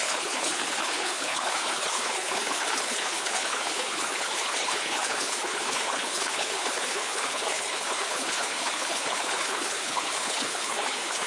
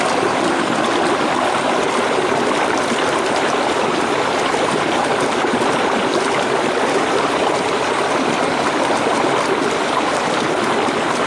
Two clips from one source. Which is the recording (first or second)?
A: second